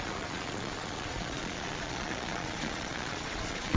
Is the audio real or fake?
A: fake